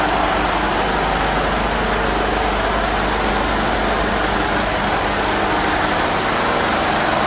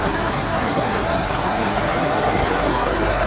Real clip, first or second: first